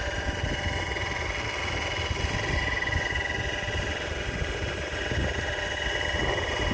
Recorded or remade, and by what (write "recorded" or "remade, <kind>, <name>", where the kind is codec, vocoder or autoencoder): recorded